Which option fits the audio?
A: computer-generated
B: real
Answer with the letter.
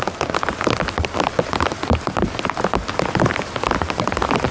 B